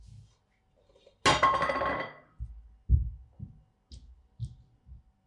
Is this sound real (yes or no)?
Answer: yes